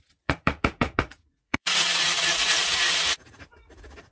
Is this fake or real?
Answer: fake